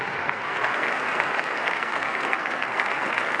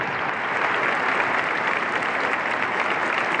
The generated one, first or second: first